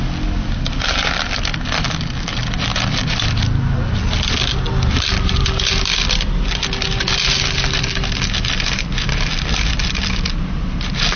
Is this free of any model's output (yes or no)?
yes